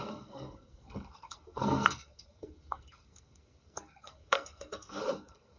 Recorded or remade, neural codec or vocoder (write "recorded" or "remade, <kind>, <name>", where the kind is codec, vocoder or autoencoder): remade, codec, SNAC